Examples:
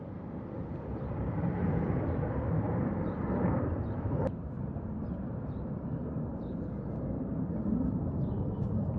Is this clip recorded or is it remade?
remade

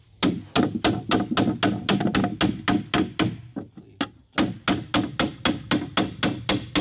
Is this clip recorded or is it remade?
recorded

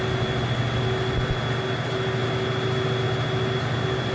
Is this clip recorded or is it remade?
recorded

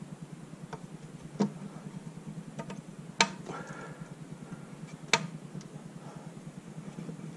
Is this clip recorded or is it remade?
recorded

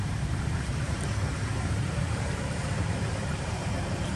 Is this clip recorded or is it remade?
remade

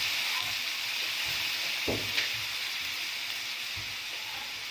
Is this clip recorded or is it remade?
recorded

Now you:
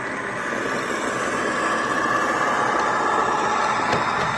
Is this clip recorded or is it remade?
remade